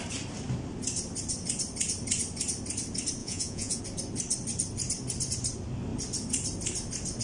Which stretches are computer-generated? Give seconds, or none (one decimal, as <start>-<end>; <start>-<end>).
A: 3.2-3.8